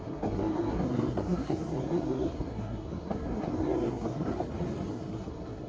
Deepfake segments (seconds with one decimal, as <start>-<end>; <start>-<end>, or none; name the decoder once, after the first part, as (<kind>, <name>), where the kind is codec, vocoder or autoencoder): 0.0-4.3 (codec, SNAC); 4.9-5.7